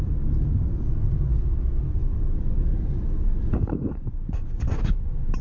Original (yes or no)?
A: no